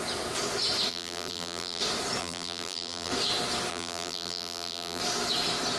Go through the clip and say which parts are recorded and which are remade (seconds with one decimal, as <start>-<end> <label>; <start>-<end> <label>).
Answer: 0.0-0.9 recorded; 0.9-1.8 remade; 1.8-2.2 recorded; 2.2-3.1 remade; 3.1-3.7 recorded; 3.7-5.0 remade; 5.0-5.8 recorded